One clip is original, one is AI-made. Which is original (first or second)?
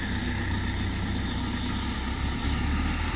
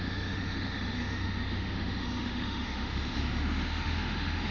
first